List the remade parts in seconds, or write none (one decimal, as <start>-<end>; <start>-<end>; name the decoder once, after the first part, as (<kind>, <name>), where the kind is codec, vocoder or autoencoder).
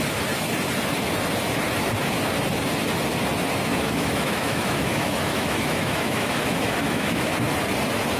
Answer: 3.7-7.3 (autoencoder, DAC-VAE)